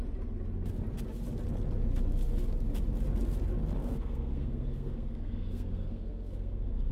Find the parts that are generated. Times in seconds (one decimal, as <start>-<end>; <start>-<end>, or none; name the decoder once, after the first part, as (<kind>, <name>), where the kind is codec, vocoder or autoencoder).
3.8-6.9 (codec, SNAC)